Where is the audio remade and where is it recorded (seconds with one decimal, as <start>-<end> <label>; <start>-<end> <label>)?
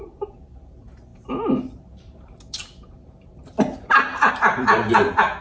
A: 0.0-5.4 recorded